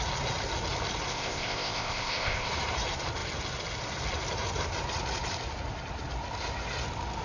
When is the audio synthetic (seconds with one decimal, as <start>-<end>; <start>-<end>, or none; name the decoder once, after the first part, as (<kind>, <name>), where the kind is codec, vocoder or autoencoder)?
1.1-2.5 (codec, ZipCodec)